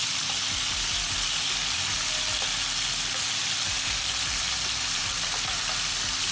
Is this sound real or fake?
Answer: real